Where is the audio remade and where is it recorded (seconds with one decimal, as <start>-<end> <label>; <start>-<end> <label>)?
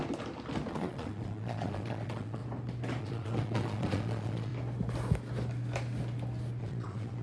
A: 0.0-0.7 recorded; 0.7-2.4 remade; 2.4-3.0 recorded; 3.0-4.5 remade; 4.5-6.6 recorded; 6.6-7.2 remade